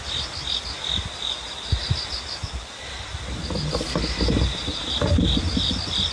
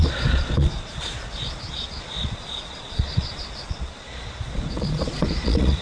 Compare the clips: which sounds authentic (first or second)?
first